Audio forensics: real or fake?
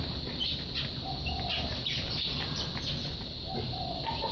real